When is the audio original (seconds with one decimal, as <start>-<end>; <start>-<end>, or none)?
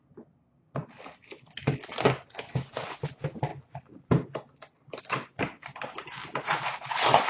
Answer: 0.0-7.3